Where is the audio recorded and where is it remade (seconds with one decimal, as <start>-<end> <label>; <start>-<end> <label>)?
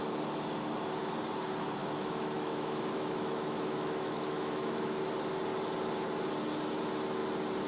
0.0-1.8 recorded; 1.8-5.1 remade; 5.1-7.7 recorded